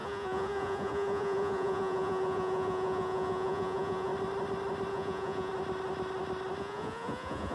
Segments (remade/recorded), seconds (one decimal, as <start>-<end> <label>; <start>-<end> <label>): 0.0-4.1 remade; 4.1-4.9 recorded; 4.9-5.5 remade; 5.5-6.6 recorded; 6.6-7.5 remade